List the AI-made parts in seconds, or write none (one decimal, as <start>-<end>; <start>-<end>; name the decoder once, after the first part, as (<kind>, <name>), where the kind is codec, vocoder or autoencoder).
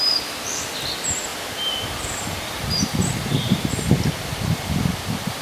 none